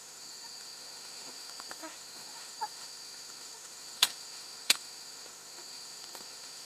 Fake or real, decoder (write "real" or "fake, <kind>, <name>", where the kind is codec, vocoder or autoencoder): fake, autoencoder, DAC-VAE